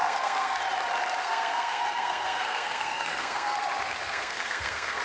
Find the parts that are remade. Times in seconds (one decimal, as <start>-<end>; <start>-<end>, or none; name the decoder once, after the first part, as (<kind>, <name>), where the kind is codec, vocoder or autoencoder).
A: 0.0-0.6 (codec, SNAC); 1.2-3.6; 4.0-5.0